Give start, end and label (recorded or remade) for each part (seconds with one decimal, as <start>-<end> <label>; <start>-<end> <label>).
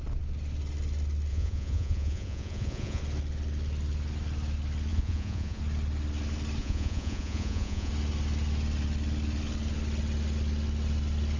0.0-1.3 recorded; 1.3-3.0 remade; 3.0-4.9 recorded; 4.9-5.6 remade; 5.6-6.6 recorded; 6.6-7.9 remade; 7.9-11.4 recorded